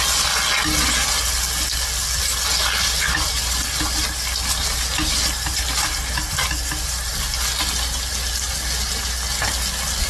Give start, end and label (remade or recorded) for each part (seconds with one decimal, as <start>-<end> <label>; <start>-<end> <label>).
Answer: 0.0-10.1 recorded

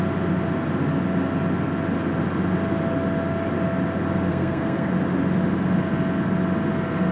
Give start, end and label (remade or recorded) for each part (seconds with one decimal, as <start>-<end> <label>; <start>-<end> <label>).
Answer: 0.0-4.3 recorded; 4.3-4.9 remade; 4.9-7.1 recorded